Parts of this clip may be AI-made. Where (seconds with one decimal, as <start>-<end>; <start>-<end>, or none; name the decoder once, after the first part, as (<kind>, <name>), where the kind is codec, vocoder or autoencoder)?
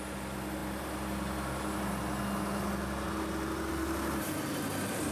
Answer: none